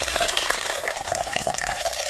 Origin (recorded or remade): remade